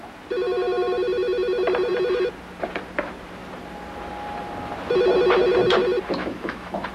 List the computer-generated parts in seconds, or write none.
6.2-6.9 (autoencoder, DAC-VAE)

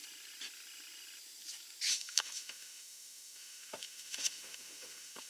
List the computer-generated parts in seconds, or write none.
1.9-5.3 (autoencoder, DAC-VAE)

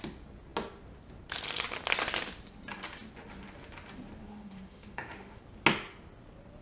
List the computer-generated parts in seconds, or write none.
4.2-5.4 (autoencoder, DAC-VAE)

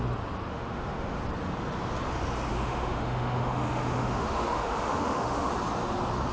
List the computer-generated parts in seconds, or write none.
0.5-1.2 (autoencoder, DAC-VAE); 2.5-5.5

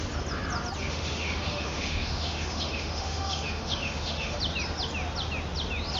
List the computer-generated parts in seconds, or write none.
0.8-4.4 (autoencoder, DAC-VAE)